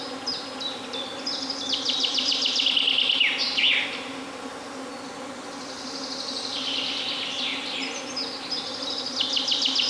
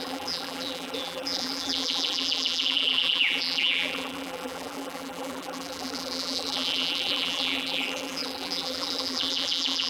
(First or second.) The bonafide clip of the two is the first